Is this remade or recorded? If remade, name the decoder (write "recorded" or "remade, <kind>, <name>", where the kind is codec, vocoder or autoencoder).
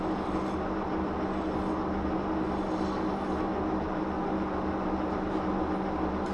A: recorded